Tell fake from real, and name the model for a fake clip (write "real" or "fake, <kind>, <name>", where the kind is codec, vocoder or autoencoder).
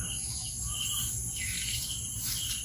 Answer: real